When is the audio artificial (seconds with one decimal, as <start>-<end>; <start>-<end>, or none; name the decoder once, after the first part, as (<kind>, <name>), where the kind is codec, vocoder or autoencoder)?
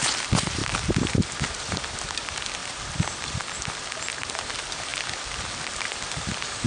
2.6-4.5 (vocoder, BigVGAN v2)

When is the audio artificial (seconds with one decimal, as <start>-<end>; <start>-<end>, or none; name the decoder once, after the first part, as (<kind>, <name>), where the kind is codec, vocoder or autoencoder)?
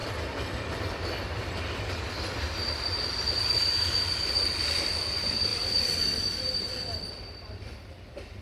5.5-8.4 (vocoder, BigVGAN v2)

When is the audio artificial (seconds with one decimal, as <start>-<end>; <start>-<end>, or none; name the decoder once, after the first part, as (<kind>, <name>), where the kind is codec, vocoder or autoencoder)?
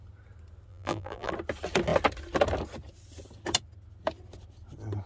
0.7-1.3 (vocoder, BigVGAN v2)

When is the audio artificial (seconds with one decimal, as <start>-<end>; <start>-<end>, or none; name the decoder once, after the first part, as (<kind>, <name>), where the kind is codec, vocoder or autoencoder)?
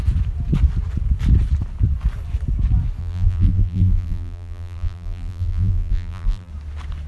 3.0-6.5 (vocoder, BigVGAN v2)